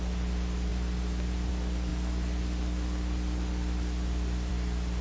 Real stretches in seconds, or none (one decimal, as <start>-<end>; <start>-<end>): 0.0-5.0